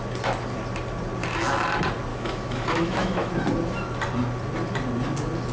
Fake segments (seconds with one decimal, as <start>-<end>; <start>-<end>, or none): 2.1-3.3